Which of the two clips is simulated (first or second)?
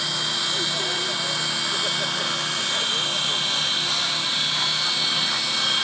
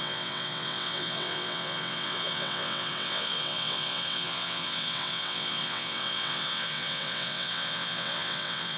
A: second